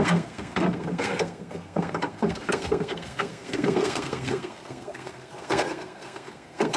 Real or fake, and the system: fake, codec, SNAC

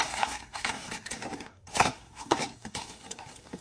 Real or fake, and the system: fake, codec, SNAC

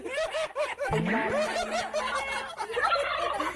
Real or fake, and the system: real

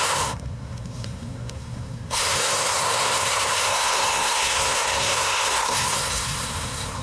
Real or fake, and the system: fake, codec, SNAC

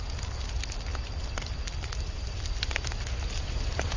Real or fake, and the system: real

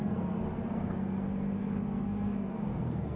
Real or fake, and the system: fake, codec, SNAC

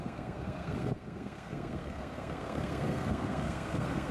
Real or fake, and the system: fake, codec, SNAC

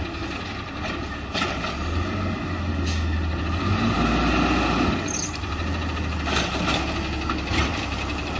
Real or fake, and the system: real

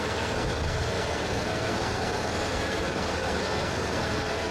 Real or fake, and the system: fake, codec, SNAC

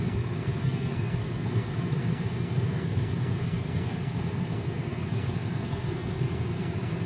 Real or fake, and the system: fake, codec, SNAC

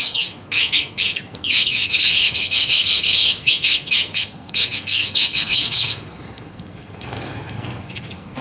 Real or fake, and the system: fake, codec, SNAC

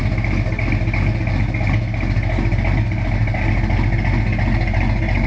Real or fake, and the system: real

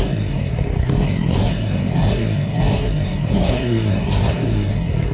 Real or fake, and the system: fake, codec, SNAC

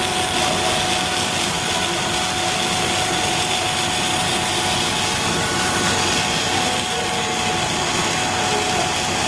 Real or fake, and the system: real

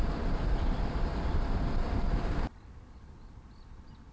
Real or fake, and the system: real